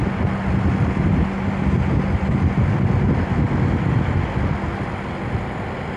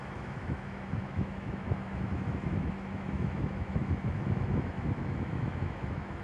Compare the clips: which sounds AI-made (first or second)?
second